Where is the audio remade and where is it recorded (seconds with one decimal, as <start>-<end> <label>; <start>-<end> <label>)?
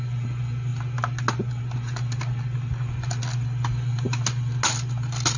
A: 0.0-5.4 recorded